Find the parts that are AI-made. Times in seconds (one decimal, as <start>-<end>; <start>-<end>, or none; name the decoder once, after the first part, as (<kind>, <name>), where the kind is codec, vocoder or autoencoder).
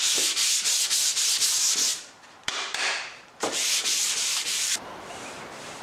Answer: 1.9-5.8 (vocoder, BigVGAN v2)